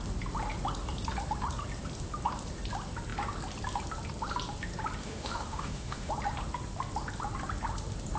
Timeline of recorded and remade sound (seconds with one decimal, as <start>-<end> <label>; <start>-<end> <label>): 0.0-5.0 recorded; 5.0-6.1 remade; 6.1-8.2 recorded